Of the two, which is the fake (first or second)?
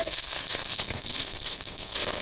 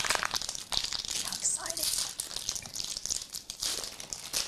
first